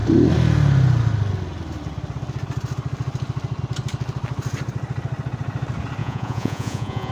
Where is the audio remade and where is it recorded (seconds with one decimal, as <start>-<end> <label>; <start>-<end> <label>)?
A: 0.0-6.0 recorded; 6.0-7.1 remade